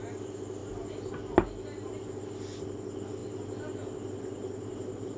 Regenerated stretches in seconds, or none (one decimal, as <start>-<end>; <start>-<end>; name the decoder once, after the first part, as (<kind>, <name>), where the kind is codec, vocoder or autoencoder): none